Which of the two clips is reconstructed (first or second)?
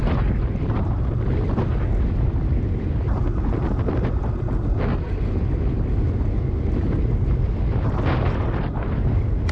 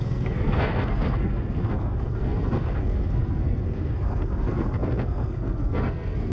second